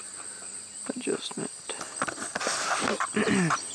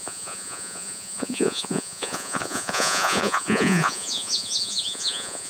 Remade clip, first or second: second